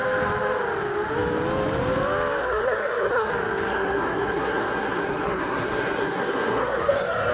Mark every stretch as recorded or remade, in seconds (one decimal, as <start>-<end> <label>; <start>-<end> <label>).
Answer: 0.0-2.4 recorded; 2.4-3.3 remade; 3.3-3.7 recorded; 3.7-7.3 remade